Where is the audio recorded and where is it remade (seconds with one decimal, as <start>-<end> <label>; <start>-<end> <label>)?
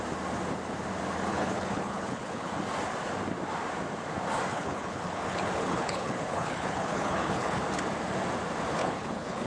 0.0-1.3 recorded; 1.3-2.6 remade; 2.6-4.5 recorded; 4.5-7.6 remade; 7.6-8.8 recorded; 8.8-9.5 remade